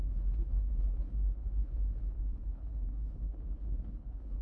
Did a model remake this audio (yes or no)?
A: yes